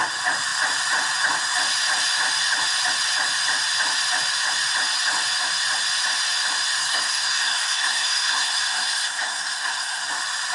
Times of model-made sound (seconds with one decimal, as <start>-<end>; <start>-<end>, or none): 6.8-10.1